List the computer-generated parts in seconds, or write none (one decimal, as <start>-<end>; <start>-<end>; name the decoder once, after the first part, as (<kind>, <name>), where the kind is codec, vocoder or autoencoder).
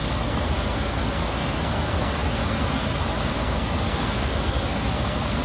0.0-5.4 (codec, SNAC)